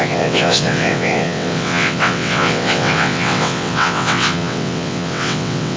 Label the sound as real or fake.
fake